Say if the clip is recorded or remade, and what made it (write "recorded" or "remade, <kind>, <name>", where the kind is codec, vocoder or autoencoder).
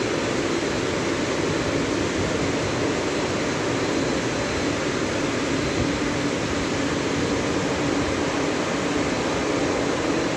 recorded